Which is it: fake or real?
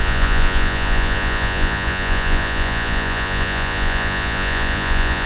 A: fake